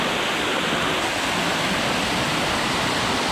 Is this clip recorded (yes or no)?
yes